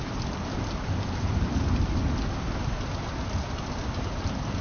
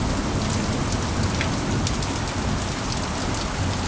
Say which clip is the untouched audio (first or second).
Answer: second